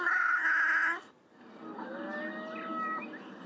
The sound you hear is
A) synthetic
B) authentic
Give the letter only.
B